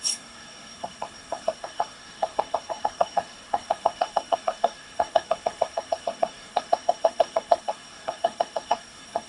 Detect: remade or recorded remade